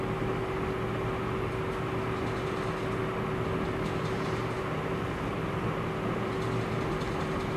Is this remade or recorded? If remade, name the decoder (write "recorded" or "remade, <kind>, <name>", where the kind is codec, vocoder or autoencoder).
recorded